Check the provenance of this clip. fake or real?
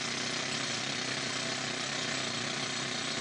real